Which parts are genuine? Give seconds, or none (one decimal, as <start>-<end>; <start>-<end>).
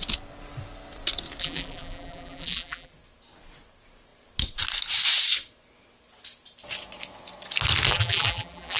0.0-1.4; 2.9-7.9